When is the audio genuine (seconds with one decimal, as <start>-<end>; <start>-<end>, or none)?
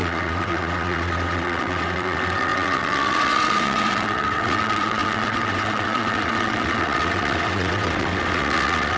none